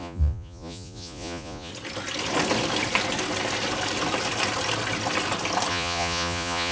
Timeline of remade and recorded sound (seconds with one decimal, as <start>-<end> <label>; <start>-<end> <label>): 0.0-1.7 remade; 1.7-5.7 recorded; 5.7-6.7 remade